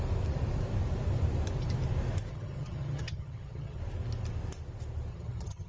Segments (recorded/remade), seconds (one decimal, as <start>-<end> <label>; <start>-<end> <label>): 0.0-2.3 recorded; 2.3-3.8 remade; 3.8-5.1 recorded; 5.1-5.7 remade